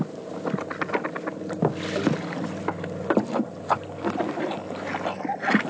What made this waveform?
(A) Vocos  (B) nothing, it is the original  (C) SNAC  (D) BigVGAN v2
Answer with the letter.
B